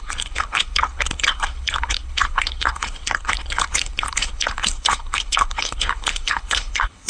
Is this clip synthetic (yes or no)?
yes